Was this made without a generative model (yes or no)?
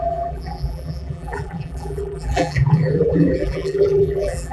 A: no